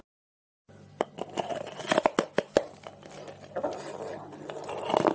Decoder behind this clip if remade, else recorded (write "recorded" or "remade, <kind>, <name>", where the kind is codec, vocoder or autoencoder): recorded